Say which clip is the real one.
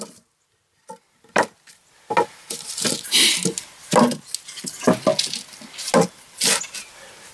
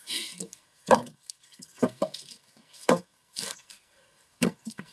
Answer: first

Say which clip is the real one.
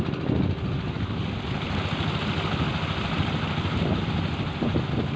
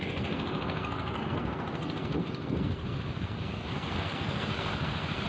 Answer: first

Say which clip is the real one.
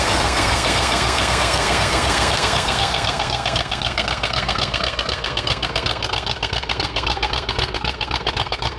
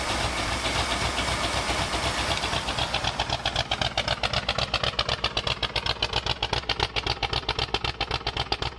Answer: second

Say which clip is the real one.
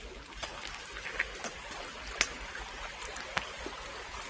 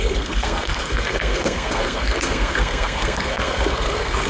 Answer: first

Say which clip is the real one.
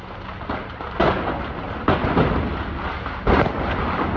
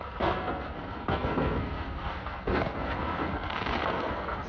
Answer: first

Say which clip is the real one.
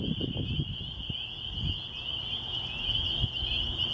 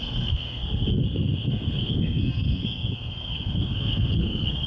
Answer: first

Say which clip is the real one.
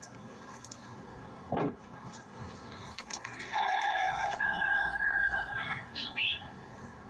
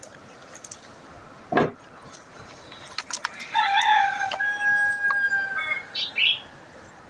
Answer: second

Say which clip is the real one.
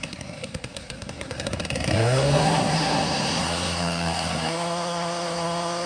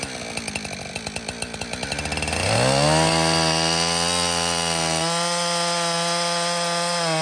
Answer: second